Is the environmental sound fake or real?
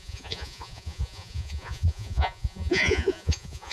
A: fake